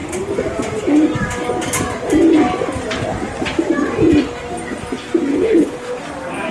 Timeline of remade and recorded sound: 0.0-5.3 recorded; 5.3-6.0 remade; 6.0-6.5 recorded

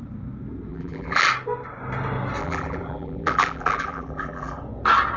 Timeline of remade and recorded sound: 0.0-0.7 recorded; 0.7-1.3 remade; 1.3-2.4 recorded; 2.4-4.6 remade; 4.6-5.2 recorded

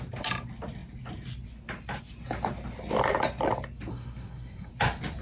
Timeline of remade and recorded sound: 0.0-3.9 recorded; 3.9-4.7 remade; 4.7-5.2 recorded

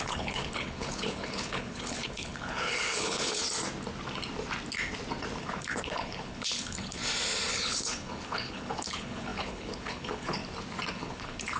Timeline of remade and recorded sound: 0.0-3.4 remade; 3.4-5.4 recorded; 5.4-7.0 remade; 7.0-7.5 recorded; 7.5-10.4 remade; 10.4-10.9 recorded; 10.9-11.6 remade